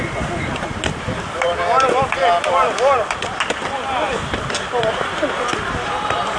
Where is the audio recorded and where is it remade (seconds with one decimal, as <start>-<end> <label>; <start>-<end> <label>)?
0.0-2.2 remade; 2.2-4.8 recorded; 4.8-6.4 remade